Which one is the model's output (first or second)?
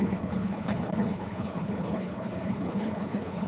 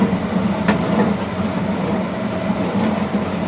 first